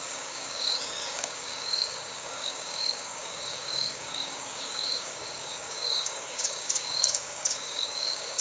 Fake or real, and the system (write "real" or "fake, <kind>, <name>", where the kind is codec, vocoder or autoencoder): fake, codec, DAC